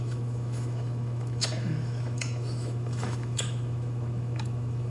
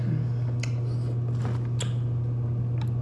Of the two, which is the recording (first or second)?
second